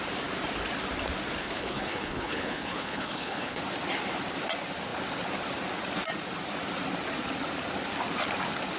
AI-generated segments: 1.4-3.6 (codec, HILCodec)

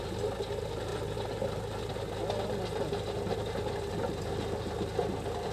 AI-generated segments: none

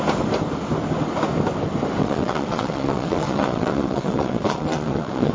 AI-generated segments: 2.0-5.3 (vocoder, WaveNeXt)

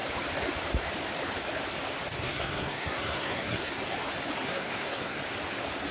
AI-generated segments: 2.2-3.7 (codec, SNAC); 4.4-5.2